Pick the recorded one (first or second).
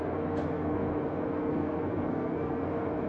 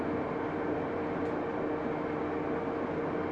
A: second